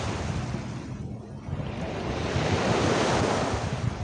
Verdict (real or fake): real